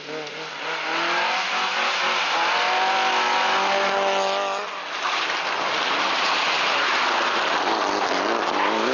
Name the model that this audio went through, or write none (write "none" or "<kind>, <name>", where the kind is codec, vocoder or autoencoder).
none